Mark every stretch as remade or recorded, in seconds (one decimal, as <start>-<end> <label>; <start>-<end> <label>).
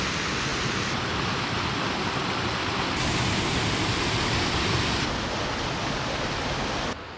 0.0-5.8 recorded; 5.8-6.5 remade; 6.5-7.2 recorded